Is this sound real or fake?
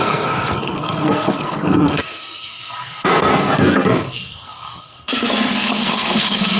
fake